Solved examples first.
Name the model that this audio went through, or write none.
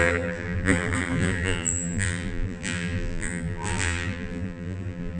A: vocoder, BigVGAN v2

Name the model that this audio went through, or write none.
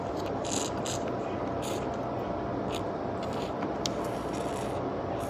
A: vocoder, BigVGAN v2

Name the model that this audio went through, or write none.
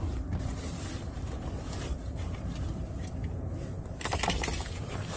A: vocoder, BigVGAN v2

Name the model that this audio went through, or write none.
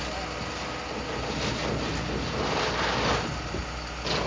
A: none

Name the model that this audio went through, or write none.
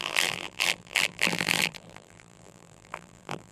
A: vocoder, BigVGAN v2